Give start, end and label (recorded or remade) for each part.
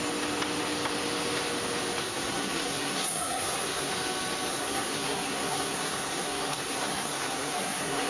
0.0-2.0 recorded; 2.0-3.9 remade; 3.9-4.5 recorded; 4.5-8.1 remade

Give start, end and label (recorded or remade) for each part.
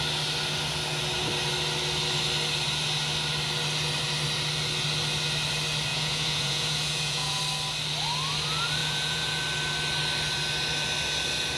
0.0-5.9 recorded; 5.9-7.4 remade; 7.4-8.8 recorded; 8.8-9.4 remade; 9.4-11.6 recorded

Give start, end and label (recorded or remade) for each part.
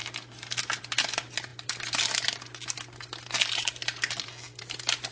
0.0-5.1 recorded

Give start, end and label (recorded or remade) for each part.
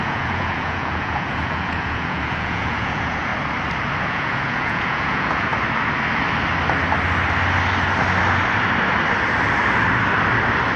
0.0-3.3 remade; 3.3-4.0 recorded; 4.0-5.5 remade; 5.5-10.8 recorded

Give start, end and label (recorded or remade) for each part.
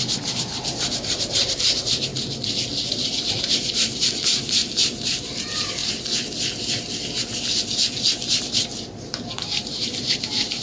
0.0-2.1 remade; 2.1-2.9 recorded; 2.9-5.8 remade; 5.8-8.4 recorded; 8.4-10.6 remade